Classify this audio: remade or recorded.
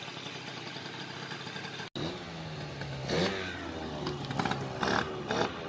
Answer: recorded